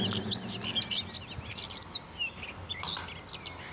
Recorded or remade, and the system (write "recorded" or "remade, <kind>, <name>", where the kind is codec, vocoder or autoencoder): recorded